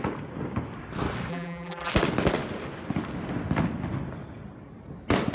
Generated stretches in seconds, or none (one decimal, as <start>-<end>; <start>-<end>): 1.3-1.9